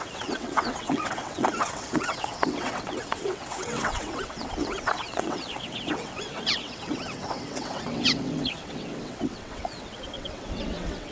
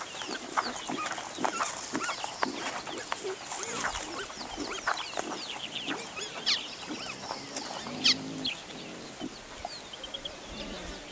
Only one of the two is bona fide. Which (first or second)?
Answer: second